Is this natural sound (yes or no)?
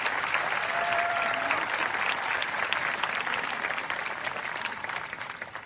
no